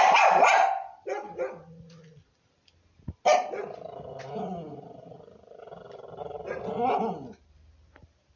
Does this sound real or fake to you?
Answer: real